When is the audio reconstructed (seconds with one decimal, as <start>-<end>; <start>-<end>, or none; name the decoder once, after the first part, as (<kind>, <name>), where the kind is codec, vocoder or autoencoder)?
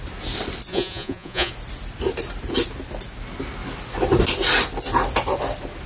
0.7-1.5 (vocoder, Vocos)